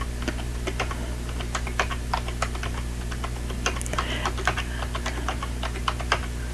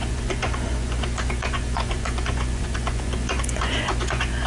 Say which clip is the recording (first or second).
first